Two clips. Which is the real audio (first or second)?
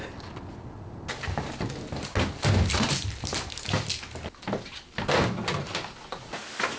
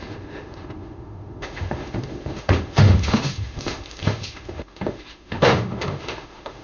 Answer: first